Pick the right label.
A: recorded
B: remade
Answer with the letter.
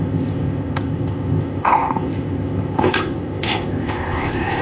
B